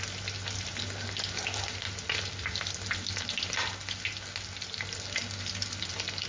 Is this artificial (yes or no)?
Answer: no